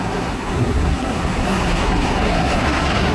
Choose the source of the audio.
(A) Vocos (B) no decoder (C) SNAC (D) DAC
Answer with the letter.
C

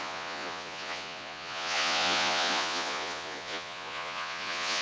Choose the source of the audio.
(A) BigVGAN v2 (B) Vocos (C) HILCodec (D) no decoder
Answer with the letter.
B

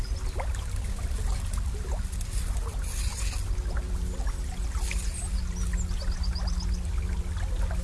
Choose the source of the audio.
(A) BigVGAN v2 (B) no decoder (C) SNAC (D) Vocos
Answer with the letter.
B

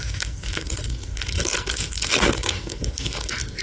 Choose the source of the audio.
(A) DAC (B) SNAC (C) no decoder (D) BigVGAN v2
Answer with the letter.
B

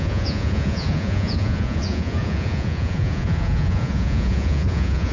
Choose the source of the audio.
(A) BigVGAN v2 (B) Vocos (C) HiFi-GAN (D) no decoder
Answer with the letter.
B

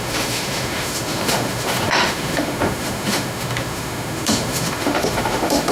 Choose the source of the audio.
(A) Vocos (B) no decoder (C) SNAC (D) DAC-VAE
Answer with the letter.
D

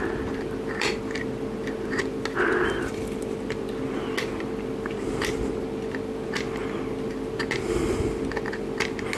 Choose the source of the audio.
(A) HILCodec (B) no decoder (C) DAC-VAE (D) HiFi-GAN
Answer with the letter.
B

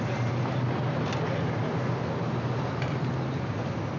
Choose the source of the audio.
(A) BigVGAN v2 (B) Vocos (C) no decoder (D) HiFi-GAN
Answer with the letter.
C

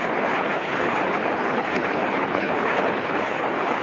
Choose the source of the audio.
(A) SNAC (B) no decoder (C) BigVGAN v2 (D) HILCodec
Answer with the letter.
D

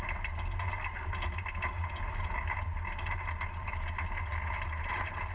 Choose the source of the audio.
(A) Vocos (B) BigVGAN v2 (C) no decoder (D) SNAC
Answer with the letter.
C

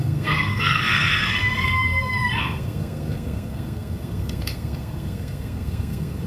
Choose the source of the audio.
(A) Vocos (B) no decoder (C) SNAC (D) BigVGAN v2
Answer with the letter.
C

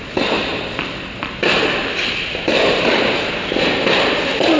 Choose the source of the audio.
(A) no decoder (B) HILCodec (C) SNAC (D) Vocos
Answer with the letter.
A